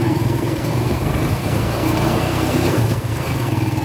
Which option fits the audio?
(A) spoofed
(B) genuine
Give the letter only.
A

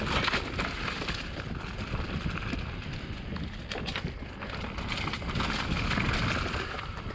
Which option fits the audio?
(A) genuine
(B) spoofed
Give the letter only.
A